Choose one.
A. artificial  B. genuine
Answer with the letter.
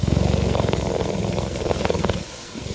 A